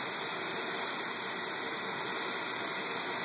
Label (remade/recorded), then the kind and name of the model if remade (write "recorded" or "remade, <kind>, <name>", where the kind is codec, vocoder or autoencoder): recorded